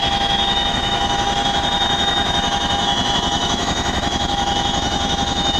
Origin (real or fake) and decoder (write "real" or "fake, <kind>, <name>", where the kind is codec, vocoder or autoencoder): fake, autoencoder, DAC-VAE